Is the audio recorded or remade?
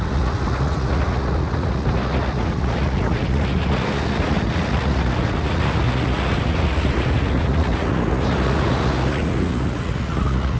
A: remade